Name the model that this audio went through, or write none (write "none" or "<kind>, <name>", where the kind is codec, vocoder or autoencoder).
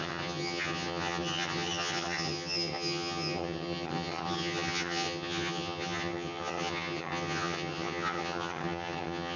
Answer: vocoder, HiFi-GAN